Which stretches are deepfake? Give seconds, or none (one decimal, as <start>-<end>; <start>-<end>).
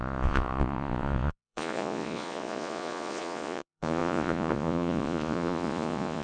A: 0.0-6.2